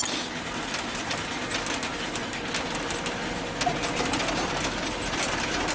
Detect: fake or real real